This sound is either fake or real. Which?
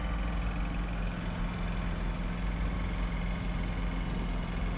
real